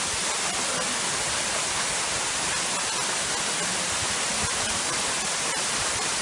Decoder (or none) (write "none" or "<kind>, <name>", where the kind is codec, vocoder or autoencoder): none